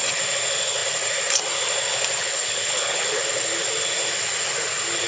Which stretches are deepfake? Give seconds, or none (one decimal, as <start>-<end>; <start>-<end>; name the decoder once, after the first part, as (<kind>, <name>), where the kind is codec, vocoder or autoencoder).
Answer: 2.2-3.2 (codec, HILCodec)